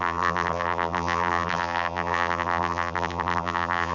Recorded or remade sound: remade